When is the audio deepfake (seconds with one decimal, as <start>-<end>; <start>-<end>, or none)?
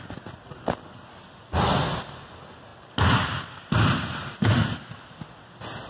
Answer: none